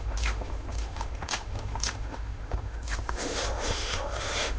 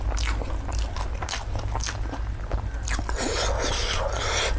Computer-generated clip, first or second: first